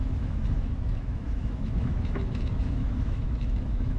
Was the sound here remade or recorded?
remade